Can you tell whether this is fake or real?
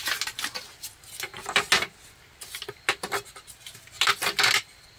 real